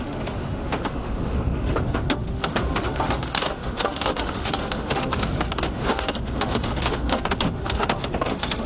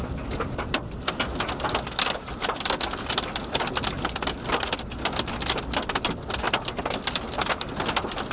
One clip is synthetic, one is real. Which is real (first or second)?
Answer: second